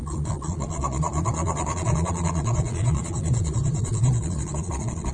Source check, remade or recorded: remade